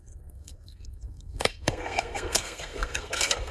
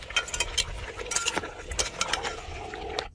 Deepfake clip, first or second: first